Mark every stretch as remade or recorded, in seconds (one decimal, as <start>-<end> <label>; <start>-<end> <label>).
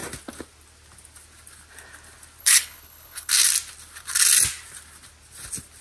0.0-2.4 recorded; 2.4-3.3 remade; 3.3-5.8 recorded